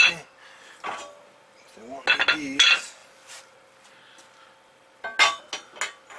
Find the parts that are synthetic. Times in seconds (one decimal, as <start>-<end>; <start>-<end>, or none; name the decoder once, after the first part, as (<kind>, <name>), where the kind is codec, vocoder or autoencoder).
none

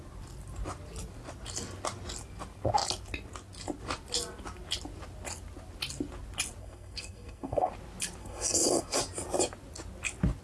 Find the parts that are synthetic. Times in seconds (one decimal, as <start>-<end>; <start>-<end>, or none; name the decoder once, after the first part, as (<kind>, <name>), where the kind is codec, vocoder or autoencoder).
6.6-7.7 (codec, SNAC); 8.2-9.0

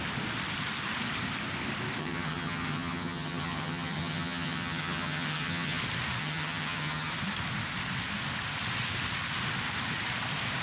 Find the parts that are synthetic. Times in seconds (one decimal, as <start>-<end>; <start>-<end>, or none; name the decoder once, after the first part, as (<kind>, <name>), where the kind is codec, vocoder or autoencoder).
2.0-5.8 (vocoder, HiFi-GAN); 6.2-7.1